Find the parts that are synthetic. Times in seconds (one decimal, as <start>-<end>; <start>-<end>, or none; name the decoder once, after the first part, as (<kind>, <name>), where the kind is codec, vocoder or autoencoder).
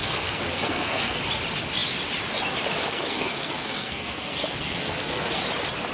0.0-1.2 (codec, SNAC); 2.9-5.4